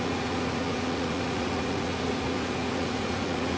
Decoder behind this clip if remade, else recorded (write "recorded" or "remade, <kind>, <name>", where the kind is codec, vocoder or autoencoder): remade, vocoder, Vocos